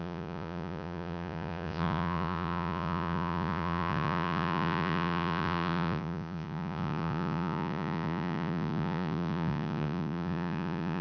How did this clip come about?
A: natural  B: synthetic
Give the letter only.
B